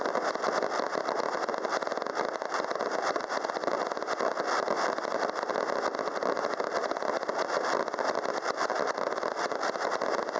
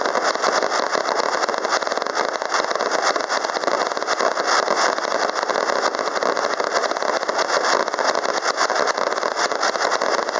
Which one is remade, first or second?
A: first